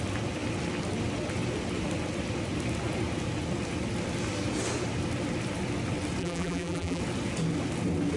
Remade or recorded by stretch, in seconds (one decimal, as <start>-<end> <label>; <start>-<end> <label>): 0.0-6.2 recorded; 6.2-7.0 remade; 7.0-8.2 recorded